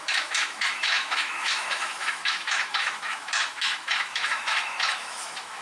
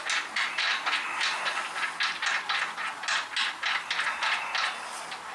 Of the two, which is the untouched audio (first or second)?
second